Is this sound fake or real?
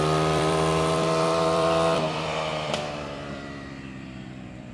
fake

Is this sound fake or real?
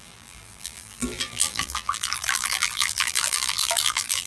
fake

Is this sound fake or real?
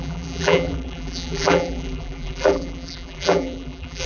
fake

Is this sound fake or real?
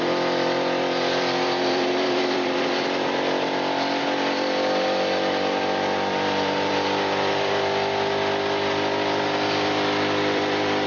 fake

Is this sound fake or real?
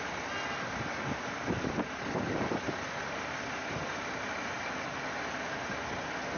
real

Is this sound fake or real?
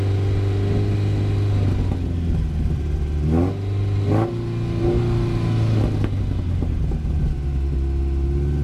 real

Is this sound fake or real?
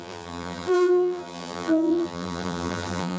fake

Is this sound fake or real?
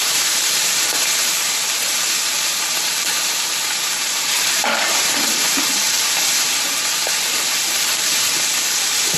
fake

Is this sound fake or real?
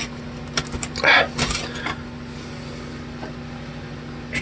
real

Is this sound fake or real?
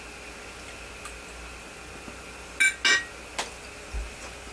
real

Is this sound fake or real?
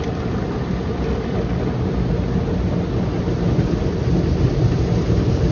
real